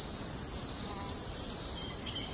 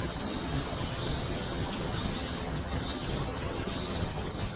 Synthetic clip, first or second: second